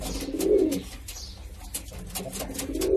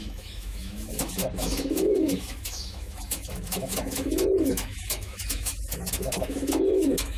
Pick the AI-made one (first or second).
second